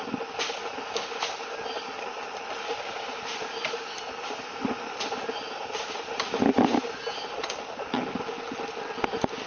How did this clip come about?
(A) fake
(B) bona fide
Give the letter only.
B